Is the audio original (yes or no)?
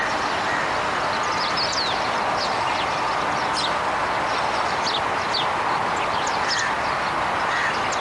yes